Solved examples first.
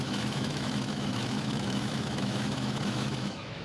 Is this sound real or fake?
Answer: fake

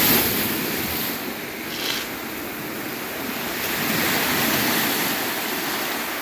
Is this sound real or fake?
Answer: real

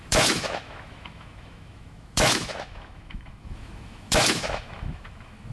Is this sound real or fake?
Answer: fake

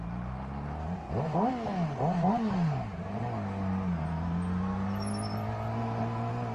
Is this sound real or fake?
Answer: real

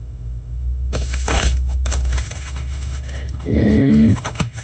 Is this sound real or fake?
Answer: fake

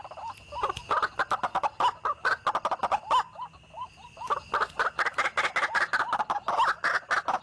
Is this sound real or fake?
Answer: real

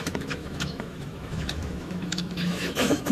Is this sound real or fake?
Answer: fake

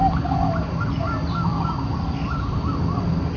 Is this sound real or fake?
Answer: real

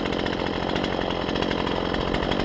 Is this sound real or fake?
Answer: real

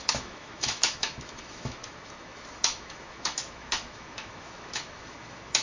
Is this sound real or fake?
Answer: fake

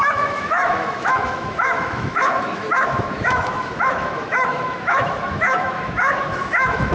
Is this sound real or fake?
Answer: fake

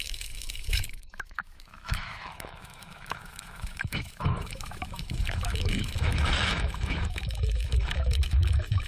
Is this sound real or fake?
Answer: fake